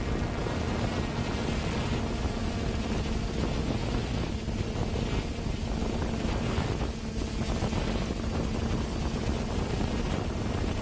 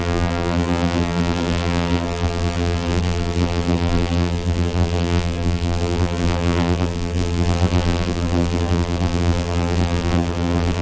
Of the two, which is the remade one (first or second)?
second